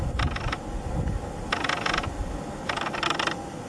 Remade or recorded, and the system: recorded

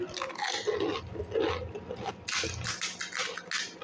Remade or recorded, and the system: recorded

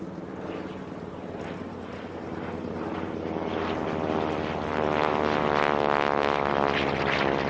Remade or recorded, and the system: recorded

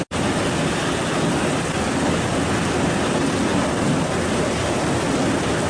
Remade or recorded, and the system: recorded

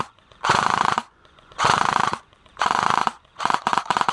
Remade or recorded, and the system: remade, vocoder, Vocos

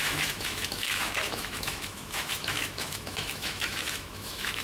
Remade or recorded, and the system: remade, autoencoder, DAC-VAE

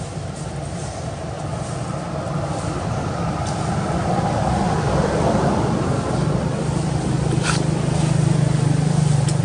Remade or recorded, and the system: recorded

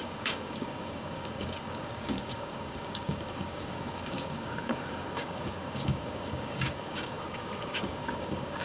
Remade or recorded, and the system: remade, codec, DAC